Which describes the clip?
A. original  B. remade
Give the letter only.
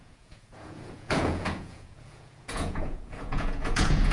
B